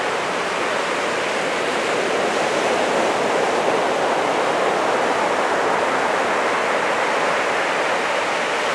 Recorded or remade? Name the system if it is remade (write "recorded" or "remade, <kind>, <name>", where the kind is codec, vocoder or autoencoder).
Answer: recorded